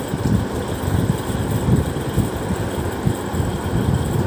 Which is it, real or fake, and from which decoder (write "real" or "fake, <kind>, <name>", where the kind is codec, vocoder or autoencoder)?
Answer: real